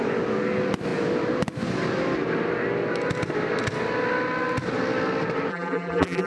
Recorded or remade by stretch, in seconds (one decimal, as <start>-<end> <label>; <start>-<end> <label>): 0.0-5.5 recorded; 5.5-6.3 remade